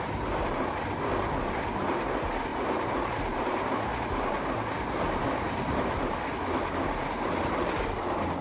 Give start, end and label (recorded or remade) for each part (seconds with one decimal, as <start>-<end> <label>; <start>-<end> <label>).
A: 0.0-2.5 recorded; 2.5-6.0 remade; 6.0-8.4 recorded